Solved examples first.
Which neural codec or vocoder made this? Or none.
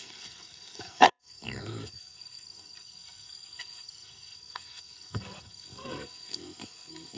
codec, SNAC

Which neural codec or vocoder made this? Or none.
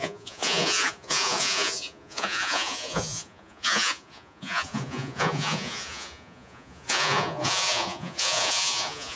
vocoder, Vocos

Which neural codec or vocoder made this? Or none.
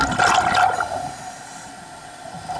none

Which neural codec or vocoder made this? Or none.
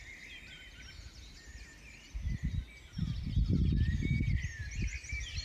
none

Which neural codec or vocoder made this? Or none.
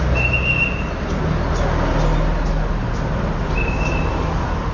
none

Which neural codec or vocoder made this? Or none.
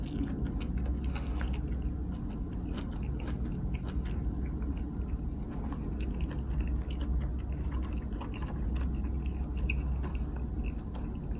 none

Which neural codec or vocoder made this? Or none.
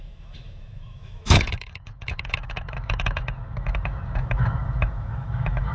autoencoder, DAC-VAE